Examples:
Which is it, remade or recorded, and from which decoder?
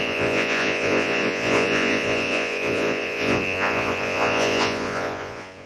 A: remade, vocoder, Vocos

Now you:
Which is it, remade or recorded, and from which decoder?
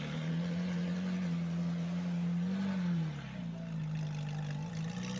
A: recorded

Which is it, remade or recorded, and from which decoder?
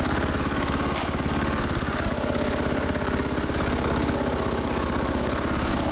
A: remade, codec, DAC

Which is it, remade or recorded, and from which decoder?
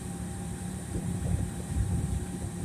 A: remade, vocoder, BigVGAN v2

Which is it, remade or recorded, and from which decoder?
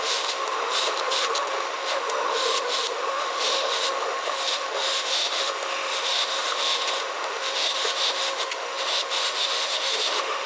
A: remade, autoencoder, DAC-VAE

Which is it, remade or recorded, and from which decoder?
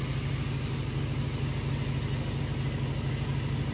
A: recorded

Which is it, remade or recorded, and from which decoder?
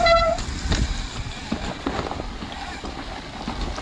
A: recorded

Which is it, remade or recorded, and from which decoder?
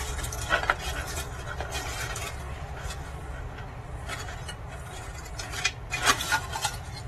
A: recorded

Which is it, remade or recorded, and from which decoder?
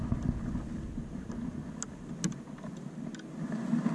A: recorded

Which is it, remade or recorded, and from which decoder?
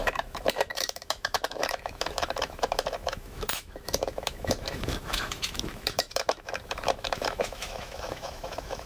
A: remade, autoencoder, DAC-VAE